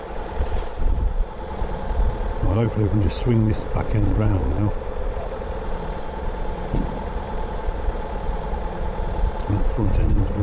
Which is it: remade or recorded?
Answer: remade